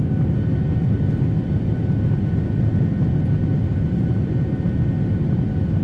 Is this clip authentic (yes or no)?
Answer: yes